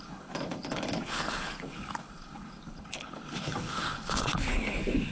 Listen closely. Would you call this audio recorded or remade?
remade